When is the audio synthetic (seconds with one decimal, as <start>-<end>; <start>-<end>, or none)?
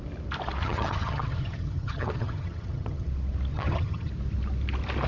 0.6-3.1; 3.5-4.1